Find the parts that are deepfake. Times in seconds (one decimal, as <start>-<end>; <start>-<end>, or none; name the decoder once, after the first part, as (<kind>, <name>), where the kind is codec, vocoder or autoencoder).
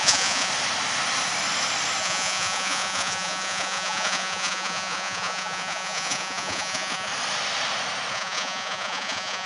0.0-0.5 (vocoder, Vocos); 2.0-7.1; 8.1-9.5